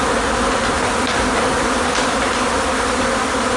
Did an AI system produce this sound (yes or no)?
no